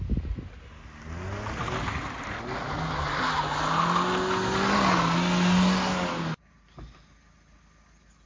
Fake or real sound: real